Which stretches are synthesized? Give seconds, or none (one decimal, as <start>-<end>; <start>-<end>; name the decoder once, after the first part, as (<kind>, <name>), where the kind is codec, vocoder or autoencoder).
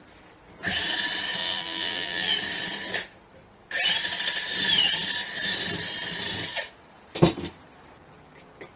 1.4-2.3 (vocoder, BigVGAN v2)